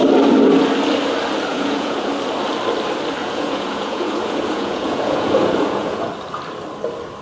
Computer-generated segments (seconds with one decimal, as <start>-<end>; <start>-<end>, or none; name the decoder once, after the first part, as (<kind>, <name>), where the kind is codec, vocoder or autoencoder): 1.5-2.1 (vocoder, Vocos); 3.2-6.1